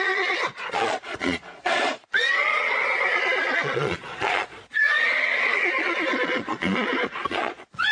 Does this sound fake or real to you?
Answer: fake